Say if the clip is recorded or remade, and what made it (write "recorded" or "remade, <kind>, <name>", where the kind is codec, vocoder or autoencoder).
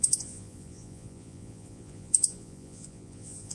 remade, vocoder, Vocos